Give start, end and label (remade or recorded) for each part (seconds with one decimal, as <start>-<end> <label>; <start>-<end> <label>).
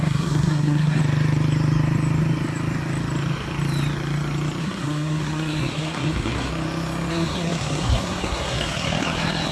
0.0-1.0 remade; 1.0-4.6 recorded; 4.6-6.5 remade; 6.5-7.1 recorded; 7.1-9.5 remade